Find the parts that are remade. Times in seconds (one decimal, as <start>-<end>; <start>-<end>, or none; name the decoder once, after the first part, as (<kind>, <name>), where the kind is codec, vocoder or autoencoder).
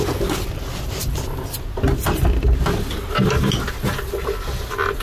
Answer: none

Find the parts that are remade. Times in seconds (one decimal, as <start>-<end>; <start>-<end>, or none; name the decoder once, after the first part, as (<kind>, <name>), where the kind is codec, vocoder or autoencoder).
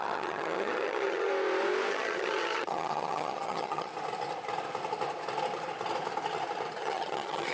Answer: 0.0-1.3 (vocoder, HiFi-GAN); 1.9-3.9; 6.8-7.5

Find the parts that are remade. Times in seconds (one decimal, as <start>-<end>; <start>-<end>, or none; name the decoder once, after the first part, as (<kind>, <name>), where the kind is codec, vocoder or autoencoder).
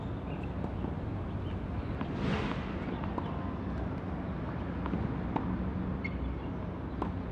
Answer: none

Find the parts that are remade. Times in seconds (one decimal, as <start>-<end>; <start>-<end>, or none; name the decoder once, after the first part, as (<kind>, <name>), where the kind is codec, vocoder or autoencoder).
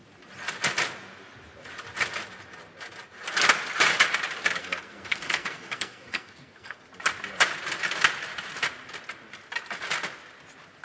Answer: 4.6-6.8 (codec, SNAC)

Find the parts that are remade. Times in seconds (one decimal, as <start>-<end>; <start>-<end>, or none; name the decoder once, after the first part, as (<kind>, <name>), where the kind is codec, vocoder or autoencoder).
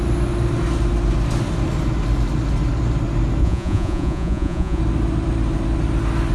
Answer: 3.4-4.8 (vocoder, Vocos)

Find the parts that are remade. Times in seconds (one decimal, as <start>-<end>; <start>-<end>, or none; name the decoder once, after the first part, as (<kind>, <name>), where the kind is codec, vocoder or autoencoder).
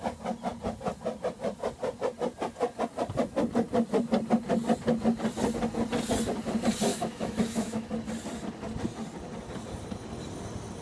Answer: 6.9-7.9 (autoencoder, DAC-VAE)